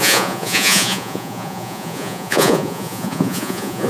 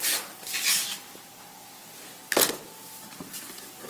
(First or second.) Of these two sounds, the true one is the second